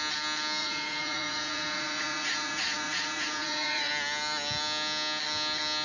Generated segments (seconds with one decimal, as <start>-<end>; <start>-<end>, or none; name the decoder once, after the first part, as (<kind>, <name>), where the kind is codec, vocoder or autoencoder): 0.6-3.9 (vocoder, Vocos)